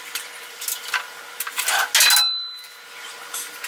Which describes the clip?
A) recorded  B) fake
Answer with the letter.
A